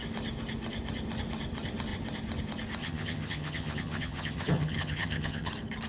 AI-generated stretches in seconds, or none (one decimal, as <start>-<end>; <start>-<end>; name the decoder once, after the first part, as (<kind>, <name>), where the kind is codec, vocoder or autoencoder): 2.8-5.5 (vocoder, HiFi-GAN)